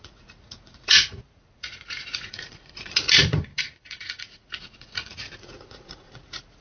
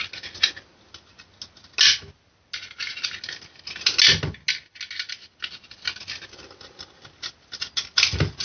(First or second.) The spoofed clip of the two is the first